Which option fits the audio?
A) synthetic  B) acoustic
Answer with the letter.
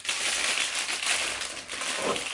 B